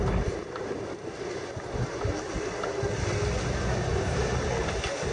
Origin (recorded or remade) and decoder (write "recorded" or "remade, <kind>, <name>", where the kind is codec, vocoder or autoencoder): recorded